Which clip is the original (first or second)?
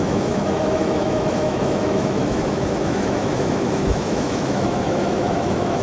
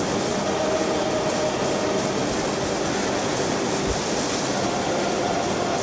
second